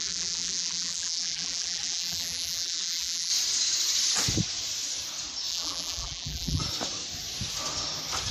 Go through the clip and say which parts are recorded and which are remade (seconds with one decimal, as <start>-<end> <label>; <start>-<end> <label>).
0.0-3.3 remade; 3.3-5.5 recorded; 5.5-6.6 remade; 6.6-8.3 recorded